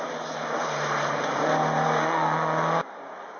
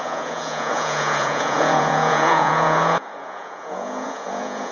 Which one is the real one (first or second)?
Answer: first